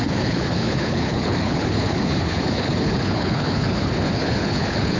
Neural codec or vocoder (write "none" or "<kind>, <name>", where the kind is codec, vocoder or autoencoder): codec, HILCodec